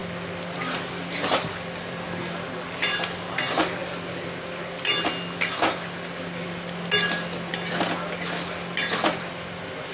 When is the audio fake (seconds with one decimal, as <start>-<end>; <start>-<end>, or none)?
none